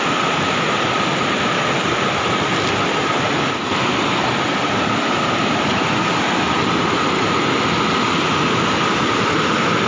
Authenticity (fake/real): real